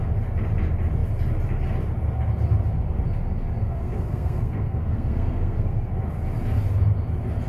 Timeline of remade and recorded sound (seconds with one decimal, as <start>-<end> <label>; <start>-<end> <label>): 0.0-3.6 recorded; 3.6-5.9 remade; 5.9-7.5 recorded